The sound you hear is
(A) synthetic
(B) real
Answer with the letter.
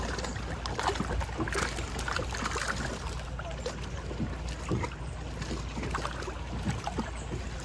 B